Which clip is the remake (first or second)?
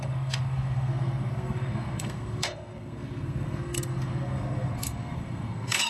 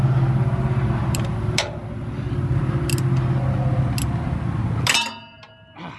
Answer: first